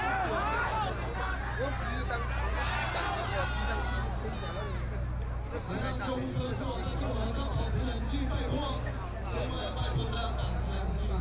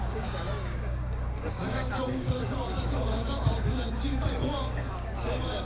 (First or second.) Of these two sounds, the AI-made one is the second